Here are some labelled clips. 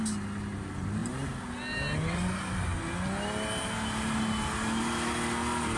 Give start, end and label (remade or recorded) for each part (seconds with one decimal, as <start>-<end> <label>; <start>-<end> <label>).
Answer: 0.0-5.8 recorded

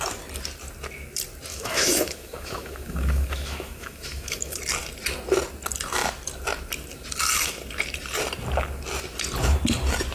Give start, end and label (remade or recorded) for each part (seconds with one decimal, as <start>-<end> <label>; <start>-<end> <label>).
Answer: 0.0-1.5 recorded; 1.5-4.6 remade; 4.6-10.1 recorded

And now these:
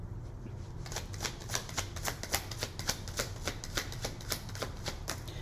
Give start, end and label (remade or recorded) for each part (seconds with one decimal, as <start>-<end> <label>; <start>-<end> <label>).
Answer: 0.0-5.4 recorded